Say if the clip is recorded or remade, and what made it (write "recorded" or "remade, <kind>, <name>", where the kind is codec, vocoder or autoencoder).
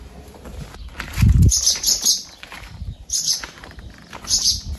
remade, vocoder, BigVGAN v2